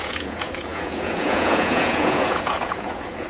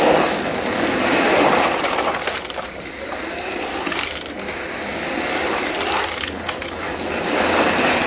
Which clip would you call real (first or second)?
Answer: second